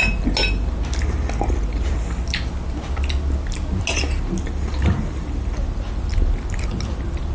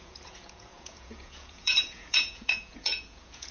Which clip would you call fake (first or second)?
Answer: second